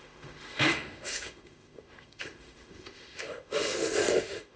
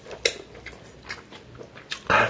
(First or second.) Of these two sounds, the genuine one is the second